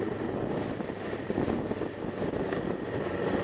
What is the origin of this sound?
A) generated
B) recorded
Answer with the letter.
B